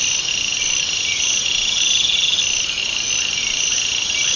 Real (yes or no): yes